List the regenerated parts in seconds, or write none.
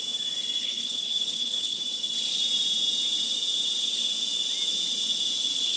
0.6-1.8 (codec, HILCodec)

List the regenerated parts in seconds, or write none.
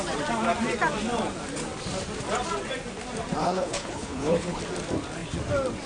3.4-4.6 (codec, HILCodec)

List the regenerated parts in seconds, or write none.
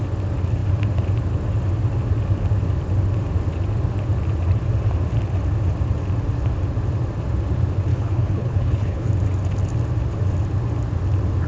7.9-9.1 (codec, HILCodec)